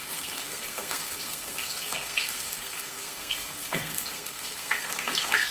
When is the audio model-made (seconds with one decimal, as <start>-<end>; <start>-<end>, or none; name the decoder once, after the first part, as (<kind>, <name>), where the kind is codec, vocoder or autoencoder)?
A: 0.0-5.5 (codec, SNAC)